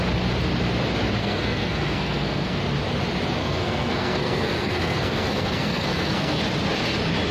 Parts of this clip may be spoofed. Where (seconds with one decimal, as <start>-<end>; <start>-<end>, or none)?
1.2-2.6; 3.4-6.4